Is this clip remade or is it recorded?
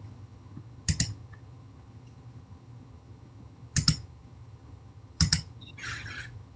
remade